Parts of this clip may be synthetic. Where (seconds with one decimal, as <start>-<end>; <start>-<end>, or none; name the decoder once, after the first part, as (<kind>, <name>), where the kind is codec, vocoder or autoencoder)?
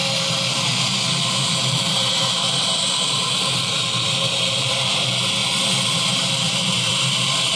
4.6-7.6 (vocoder, BigVGAN v2)